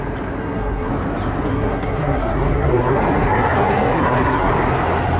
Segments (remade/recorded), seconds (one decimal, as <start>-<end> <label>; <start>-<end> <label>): 0.0-0.4 recorded; 0.4-0.9 remade; 0.9-1.5 recorded; 1.5-4.5 remade; 4.5-5.2 recorded